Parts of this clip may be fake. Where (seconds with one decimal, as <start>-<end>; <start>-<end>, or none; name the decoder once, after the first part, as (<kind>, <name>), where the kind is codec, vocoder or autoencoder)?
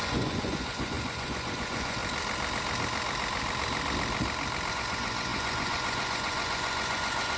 0.0-2.0 (vocoder, Vocos); 4.7-7.4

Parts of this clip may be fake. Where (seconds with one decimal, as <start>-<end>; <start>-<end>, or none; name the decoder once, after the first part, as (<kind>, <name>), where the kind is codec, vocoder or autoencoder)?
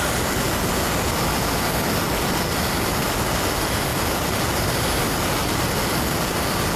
none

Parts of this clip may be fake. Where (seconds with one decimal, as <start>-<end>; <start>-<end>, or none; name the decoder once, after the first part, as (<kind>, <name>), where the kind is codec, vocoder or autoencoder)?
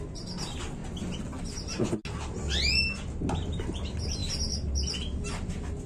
none